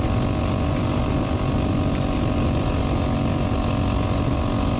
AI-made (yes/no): no